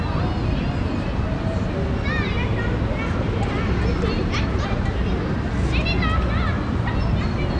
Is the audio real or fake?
real